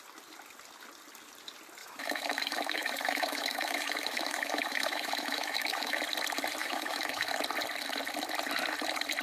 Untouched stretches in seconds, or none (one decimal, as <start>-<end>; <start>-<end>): 0.0-1.8; 6.0-6.6; 7.3-9.2